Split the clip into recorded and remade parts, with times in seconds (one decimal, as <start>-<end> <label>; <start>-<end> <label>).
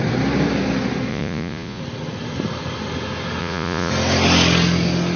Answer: 0.0-1.1 recorded; 1.1-1.8 remade; 1.8-3.4 recorded; 3.4-3.9 remade; 3.9-5.2 recorded